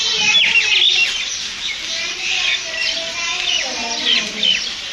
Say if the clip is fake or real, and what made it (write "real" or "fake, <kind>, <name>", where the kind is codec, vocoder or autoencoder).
real